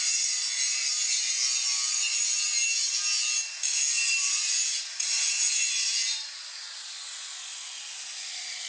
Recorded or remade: recorded